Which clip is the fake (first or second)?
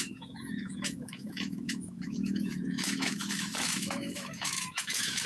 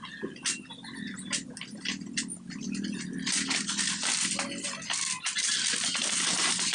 first